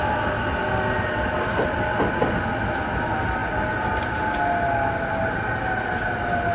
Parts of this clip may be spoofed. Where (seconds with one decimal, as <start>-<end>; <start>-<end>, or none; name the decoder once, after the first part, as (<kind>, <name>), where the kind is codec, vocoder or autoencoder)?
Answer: none